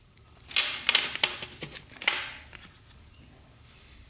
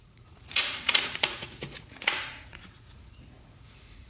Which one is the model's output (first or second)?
second